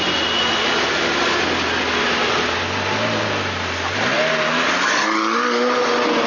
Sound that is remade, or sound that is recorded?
recorded